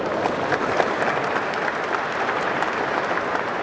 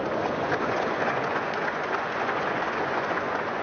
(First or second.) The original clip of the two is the first